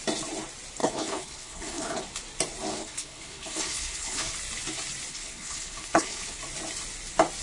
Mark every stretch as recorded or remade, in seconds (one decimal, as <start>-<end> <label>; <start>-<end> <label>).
0.0-0.8 recorded; 0.8-2.0 remade; 2.0-2.7 recorded; 2.7-4.3 remade; 4.3-5.1 recorded; 5.1-6.4 remade; 6.4-7.4 recorded